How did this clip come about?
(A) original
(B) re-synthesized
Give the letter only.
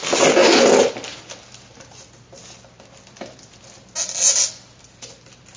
A